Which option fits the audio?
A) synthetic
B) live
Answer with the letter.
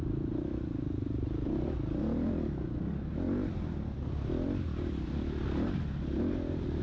B